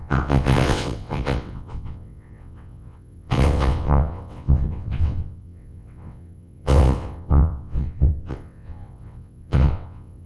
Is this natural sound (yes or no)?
no